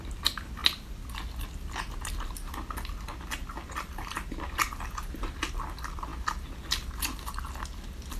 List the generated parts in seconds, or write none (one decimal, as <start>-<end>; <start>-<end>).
none

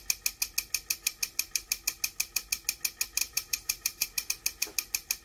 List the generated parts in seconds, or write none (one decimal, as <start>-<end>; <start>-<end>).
3.2-4.3

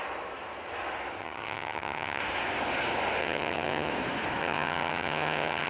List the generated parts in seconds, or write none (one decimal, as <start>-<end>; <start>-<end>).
1.2-2.2; 3.2-3.9; 4.4-5.7